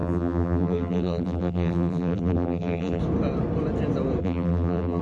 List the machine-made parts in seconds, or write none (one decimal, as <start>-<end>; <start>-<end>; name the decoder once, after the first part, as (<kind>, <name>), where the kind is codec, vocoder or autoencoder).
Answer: 0.0-3.0 (vocoder, BigVGAN v2); 4.2-5.0